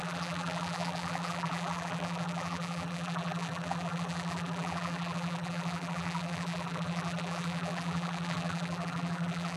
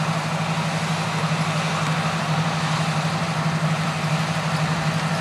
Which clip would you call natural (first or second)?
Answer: second